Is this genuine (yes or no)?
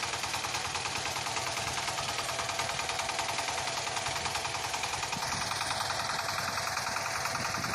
yes